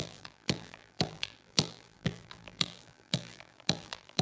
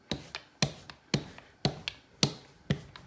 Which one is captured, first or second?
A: second